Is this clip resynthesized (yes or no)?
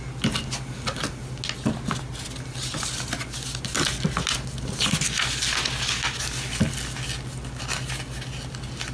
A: no